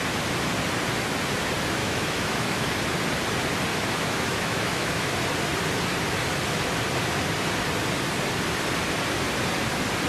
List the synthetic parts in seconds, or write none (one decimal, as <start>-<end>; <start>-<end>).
1.8-2.7; 3.7-5.1